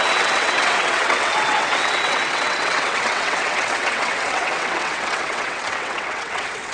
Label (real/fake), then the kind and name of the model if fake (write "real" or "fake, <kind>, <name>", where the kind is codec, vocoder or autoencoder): fake, vocoder, WaveNeXt